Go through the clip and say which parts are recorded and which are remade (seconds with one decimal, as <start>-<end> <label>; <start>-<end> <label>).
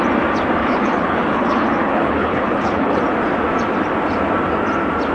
0.0-0.6 recorded; 0.6-3.0 remade; 3.0-5.1 recorded